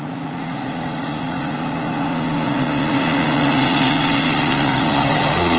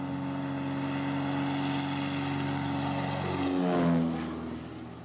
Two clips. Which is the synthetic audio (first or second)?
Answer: first